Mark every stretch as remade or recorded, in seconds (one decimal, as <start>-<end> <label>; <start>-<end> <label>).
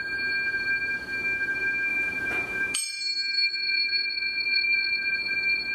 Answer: 0.0-1.9 recorded; 1.9-3.1 remade; 3.1-3.5 recorded; 3.5-5.7 remade